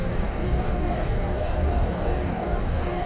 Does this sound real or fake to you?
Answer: fake